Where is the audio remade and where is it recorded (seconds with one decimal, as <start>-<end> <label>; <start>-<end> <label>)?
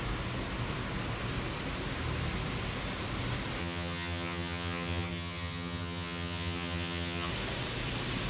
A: 0.0-3.6 recorded; 3.6-7.3 remade; 7.3-8.3 recorded